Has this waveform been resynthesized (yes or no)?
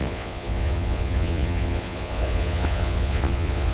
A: yes